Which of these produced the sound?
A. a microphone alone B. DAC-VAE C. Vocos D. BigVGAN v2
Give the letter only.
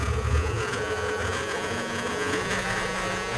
C